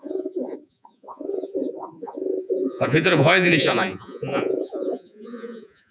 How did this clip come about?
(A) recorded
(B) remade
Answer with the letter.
B